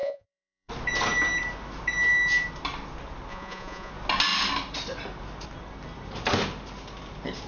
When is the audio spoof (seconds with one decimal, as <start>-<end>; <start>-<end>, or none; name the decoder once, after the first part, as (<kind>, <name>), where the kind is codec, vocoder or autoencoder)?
0.0-0.7 (vocoder, Vocos); 3.3-3.9